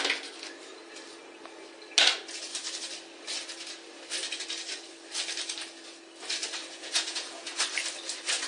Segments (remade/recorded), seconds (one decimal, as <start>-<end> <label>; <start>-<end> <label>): 0.0-6.6 recorded; 6.6-7.6 remade; 7.6-8.5 recorded